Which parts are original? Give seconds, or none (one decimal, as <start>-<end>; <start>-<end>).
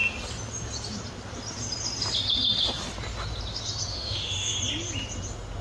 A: 0.0-3.9; 4.6-5.6